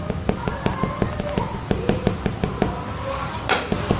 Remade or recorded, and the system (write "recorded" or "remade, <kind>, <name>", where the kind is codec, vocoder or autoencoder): recorded